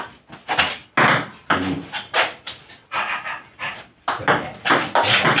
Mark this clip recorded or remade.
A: recorded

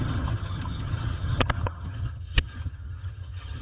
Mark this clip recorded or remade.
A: remade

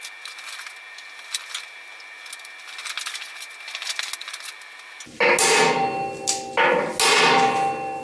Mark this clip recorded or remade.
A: recorded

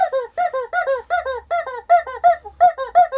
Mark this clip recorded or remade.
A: recorded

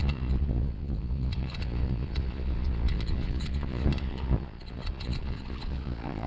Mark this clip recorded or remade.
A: remade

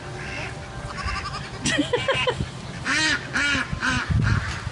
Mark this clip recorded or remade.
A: recorded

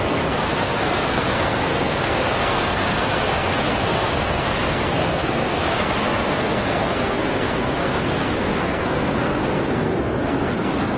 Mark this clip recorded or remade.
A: remade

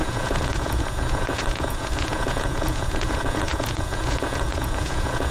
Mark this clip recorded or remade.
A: remade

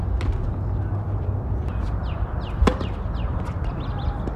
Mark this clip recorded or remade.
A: recorded